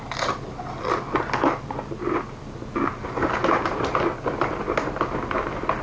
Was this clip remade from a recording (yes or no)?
no